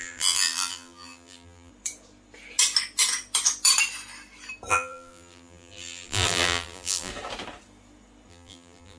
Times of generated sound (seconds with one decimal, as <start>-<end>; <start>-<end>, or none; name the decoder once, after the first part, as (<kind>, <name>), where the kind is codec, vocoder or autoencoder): 0.0-1.7 (vocoder, BigVGAN v2); 4.7-7.1; 8.3-9.0